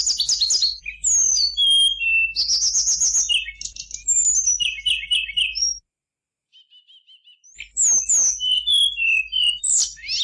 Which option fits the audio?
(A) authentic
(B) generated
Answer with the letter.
A